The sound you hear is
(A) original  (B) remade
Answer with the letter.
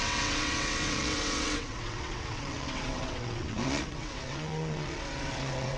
B